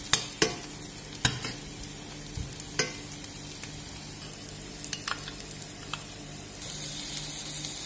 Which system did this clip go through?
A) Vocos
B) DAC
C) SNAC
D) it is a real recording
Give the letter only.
D